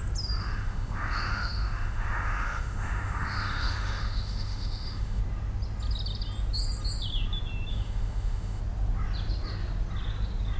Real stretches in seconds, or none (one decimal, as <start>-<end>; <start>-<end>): 0.0-0.4; 5.2-7.7; 8.6-10.6